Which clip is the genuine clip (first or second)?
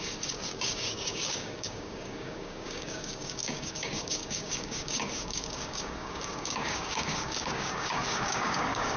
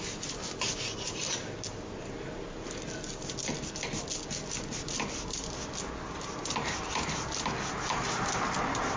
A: second